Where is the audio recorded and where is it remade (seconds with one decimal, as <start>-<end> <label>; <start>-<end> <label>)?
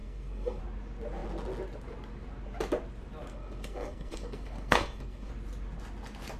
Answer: 0.0-0.6 remade; 0.6-3.3 recorded; 3.3-5.3 remade; 5.3-6.4 recorded